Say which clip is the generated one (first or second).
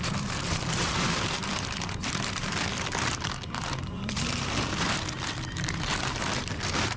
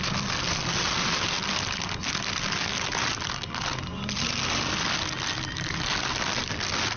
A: first